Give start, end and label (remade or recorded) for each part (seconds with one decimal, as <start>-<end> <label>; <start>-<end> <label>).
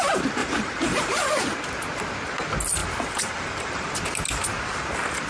0.0-0.4 recorded; 0.4-1.2 remade; 1.2-2.8 recorded; 2.8-4.0 remade; 4.0-5.3 recorded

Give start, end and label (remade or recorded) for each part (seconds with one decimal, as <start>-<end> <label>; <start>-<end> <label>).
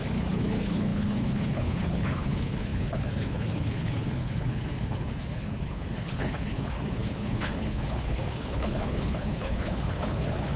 0.0-10.6 remade